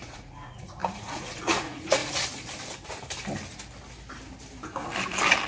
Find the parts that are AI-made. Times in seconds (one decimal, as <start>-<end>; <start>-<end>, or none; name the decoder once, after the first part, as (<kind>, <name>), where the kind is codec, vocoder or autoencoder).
0.0-2.0 (vocoder, Vocos)